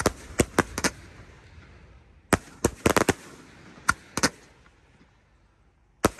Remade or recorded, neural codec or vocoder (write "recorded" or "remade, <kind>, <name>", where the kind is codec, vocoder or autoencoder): recorded